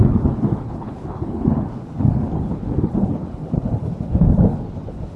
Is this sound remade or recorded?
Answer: remade